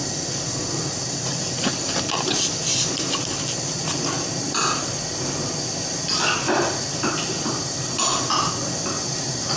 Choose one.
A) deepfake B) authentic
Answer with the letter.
B